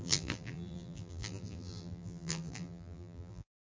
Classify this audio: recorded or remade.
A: remade